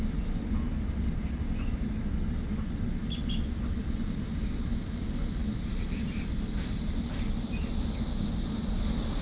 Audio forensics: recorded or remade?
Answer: recorded